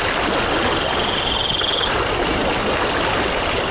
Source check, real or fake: real